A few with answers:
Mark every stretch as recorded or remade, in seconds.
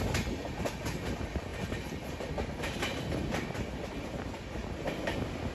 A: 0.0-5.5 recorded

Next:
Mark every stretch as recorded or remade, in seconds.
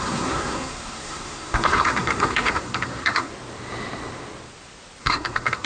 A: 0.0-3.3 remade; 3.3-5.0 recorded; 5.0-5.7 remade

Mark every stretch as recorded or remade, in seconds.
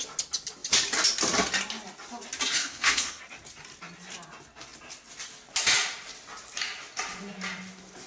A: 0.0-2.6 recorded; 2.6-3.2 remade; 3.2-8.1 recorded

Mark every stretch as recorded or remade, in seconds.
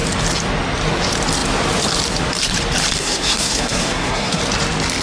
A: 0.0-3.0 recorded; 3.0-4.4 remade; 4.4-5.0 recorded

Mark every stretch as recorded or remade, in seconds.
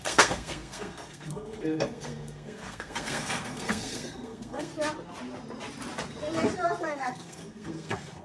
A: 0.0-4.7 remade; 4.7-6.8 recorded; 6.8-8.2 remade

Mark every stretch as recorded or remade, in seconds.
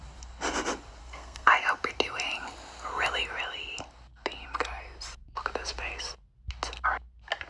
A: 0.0-1.0 recorded; 1.0-1.5 remade; 1.5-7.5 recorded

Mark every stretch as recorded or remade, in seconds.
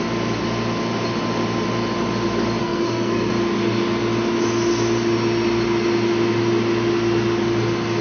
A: 0.0-2.6 recorded; 2.6-3.3 remade; 3.3-8.0 recorded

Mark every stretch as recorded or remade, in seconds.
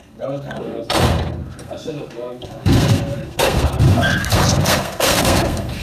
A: 0.0-5.8 remade